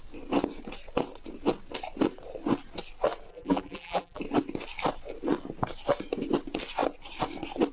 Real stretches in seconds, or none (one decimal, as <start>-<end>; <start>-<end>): 0.0-3.3; 4.2-7.7